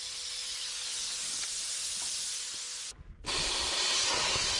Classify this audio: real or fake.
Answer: real